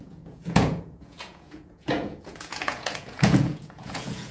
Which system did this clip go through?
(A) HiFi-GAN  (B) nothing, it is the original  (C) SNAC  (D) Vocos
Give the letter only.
D